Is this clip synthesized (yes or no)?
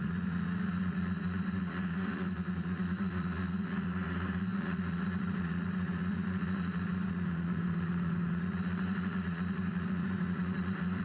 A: yes